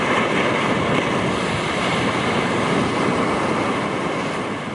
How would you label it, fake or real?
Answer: real